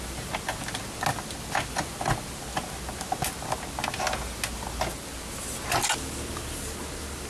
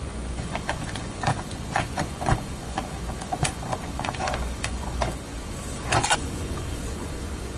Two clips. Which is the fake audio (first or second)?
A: second